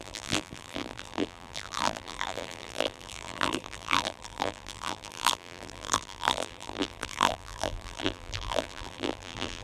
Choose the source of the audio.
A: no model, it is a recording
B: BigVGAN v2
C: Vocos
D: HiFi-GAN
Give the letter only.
B